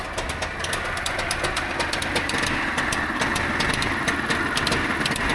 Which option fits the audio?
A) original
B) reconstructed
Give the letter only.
A